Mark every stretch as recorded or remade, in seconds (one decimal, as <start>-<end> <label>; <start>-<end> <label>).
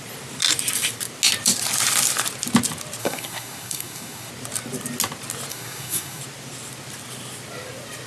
0.0-3.0 recorded; 3.0-4.3 remade; 4.3-5.5 recorded; 5.5-6.2 remade; 6.2-8.1 recorded